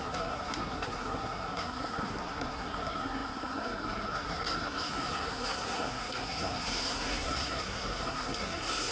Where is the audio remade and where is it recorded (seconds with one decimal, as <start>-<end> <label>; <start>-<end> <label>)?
0.0-8.9 remade